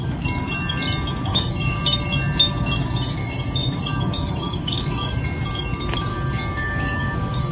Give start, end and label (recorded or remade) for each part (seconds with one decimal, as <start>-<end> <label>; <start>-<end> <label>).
0.0-1.3 recorded; 1.3-1.8 remade; 1.8-3.2 recorded; 3.2-5.2 remade; 5.2-6.1 recorded; 6.1-7.5 remade